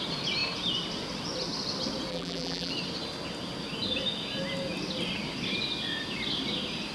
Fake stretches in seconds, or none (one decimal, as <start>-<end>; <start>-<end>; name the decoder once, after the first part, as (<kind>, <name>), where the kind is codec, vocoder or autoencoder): 2.1-2.7 (vocoder, BigVGAN v2)